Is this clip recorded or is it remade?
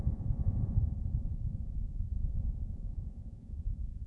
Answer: remade